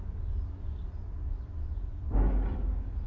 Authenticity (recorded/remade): recorded